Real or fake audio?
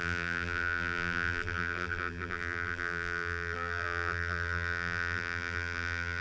fake